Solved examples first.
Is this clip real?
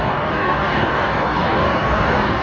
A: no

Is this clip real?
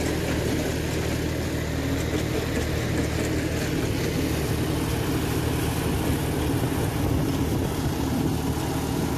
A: yes